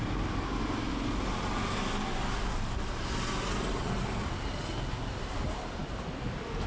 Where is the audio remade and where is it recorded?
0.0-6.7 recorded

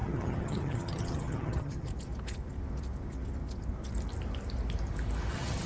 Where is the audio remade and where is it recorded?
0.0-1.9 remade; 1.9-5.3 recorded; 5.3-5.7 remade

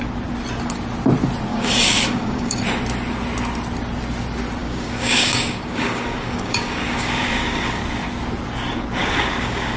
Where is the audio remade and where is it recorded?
0.0-1.5 recorded; 1.5-2.6 remade; 2.6-4.6 recorded; 4.6-7.8 remade; 7.8-9.0 recorded; 9.0-9.8 remade

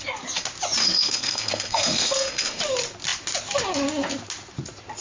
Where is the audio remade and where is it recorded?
0.0-0.8 recorded; 0.8-2.6 remade; 2.6-5.0 recorded

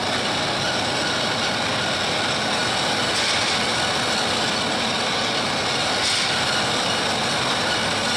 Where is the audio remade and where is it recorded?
0.0-8.2 recorded

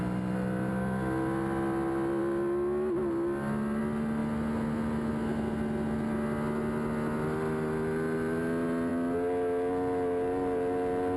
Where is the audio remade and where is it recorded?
0.0-11.2 recorded